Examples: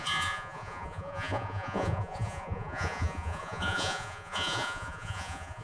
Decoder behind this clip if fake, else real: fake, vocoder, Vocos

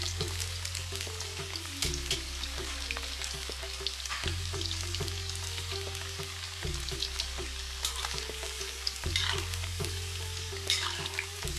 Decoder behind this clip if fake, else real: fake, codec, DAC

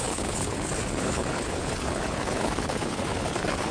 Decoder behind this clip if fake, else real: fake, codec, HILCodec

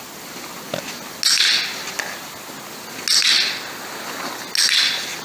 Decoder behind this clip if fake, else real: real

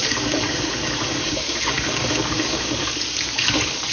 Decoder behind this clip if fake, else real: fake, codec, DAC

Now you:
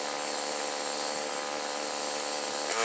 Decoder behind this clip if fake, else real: real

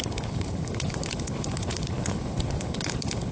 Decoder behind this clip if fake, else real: fake, codec, HILCodec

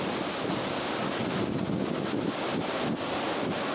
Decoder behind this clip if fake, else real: real